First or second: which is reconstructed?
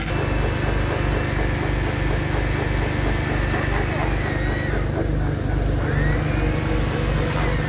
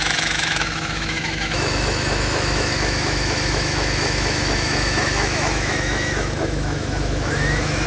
second